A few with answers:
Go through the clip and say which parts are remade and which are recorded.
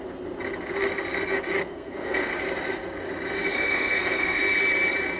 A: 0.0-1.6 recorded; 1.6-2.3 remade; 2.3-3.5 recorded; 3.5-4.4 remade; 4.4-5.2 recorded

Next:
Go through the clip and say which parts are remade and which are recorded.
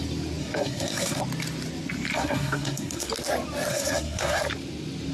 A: 0.0-0.4 recorded; 0.4-1.2 remade; 1.2-2.2 recorded; 2.2-3.1 remade; 3.1-3.7 recorded; 3.7-4.4 remade; 4.4-5.1 recorded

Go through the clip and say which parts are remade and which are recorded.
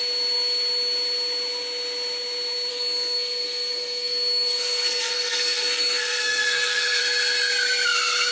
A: 0.0-2.7 recorded; 2.7-7.0 remade; 7.0-8.3 recorded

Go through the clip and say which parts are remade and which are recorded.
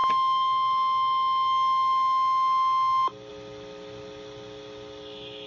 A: 0.0-5.5 recorded